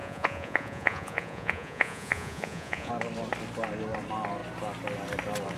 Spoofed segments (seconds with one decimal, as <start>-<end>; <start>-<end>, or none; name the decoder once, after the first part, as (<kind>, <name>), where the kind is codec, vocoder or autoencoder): 0.0-2.9 (vocoder, Vocos)